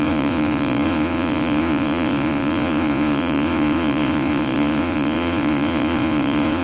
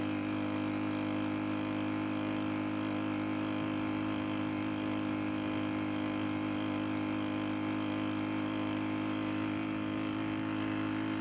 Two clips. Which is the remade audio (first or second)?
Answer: first